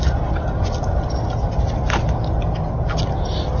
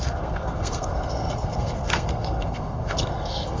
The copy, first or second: second